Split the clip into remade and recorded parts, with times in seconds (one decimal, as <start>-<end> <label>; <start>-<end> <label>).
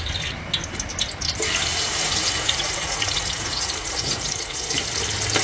0.0-1.7 recorded; 1.7-4.7 remade; 4.7-5.4 recorded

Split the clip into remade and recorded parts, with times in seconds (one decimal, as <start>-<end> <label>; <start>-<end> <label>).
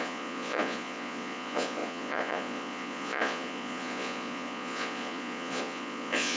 0.0-6.4 remade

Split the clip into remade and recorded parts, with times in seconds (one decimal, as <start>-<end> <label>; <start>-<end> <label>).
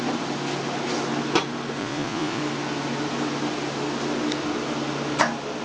0.0-1.8 recorded; 1.8-2.4 remade; 2.4-5.6 recorded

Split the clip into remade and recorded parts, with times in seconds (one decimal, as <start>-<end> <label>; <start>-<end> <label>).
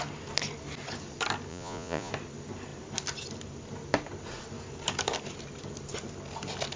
0.0-1.5 recorded; 1.5-2.1 remade; 2.1-6.8 recorded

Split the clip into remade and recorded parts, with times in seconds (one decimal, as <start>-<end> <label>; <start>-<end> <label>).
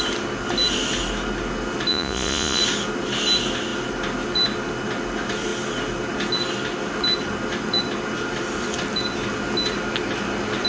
0.0-1.9 recorded; 1.9-2.6 remade; 2.6-10.7 recorded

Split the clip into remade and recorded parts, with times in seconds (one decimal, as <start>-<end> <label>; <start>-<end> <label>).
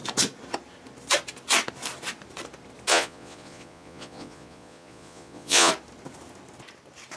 0.0-2.9 recorded; 2.9-5.7 remade; 5.7-7.2 recorded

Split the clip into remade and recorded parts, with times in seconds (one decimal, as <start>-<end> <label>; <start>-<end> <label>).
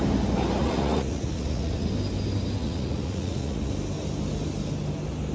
0.0-0.6 recorded; 0.6-1.9 remade; 1.9-2.6 recorded; 2.6-3.7 remade; 3.7-5.3 recorded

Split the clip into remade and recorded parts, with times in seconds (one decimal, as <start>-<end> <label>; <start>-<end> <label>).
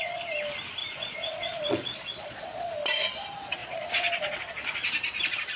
0.0-0.8 recorded; 0.8-2.7 remade; 2.7-3.6 recorded; 3.6-4.4 remade; 4.4-5.6 recorded